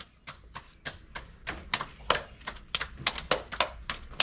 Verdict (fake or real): real